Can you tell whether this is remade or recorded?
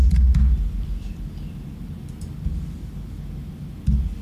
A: recorded